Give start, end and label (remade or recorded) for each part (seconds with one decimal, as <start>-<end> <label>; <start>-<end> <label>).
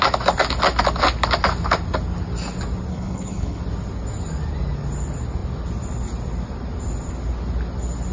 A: 0.0-2.9 recorded; 2.9-3.6 remade; 3.6-8.1 recorded